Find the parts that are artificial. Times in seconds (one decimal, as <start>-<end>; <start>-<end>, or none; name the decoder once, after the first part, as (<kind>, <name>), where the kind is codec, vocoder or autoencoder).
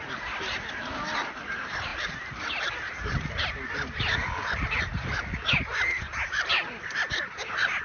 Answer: none